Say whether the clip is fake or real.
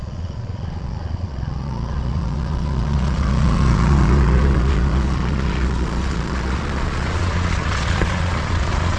fake